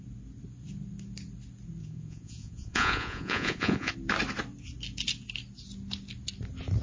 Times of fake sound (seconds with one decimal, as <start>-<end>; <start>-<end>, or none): 1.8-3.9